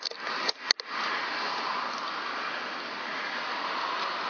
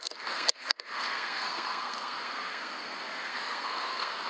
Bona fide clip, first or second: first